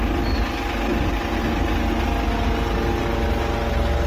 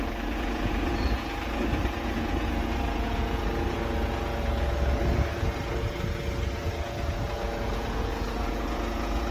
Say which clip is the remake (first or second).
second